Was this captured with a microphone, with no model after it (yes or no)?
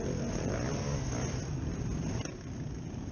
yes